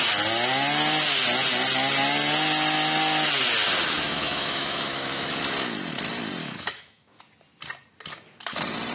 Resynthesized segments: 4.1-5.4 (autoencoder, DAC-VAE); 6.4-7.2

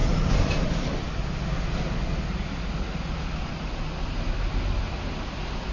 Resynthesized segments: none

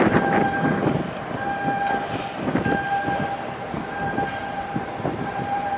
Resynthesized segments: 0.0-1.2 (vocoder, BigVGAN v2); 4.7-5.8